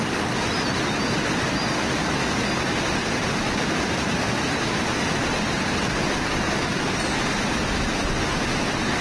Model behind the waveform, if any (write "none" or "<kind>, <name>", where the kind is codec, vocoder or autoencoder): none